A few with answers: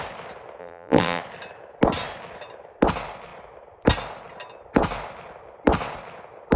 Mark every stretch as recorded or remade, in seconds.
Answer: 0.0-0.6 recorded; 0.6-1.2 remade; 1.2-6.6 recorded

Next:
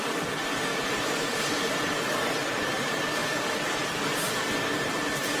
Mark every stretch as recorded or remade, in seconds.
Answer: 0.0-0.7 recorded; 0.7-1.7 remade; 1.7-3.2 recorded; 3.2-4.3 remade; 4.3-5.4 recorded

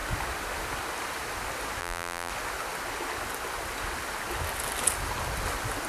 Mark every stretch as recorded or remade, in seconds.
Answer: 0.0-1.8 recorded; 1.8-2.3 remade; 2.3-5.9 recorded

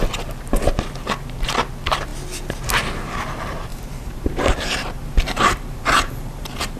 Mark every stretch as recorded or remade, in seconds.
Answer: 0.0-3.7 recorded; 3.7-6.8 remade

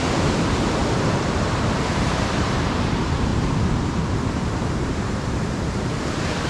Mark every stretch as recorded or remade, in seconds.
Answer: 0.0-6.5 remade